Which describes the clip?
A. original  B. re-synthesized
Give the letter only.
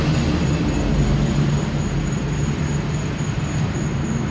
A